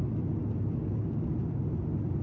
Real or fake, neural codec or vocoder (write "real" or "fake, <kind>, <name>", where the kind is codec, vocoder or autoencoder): real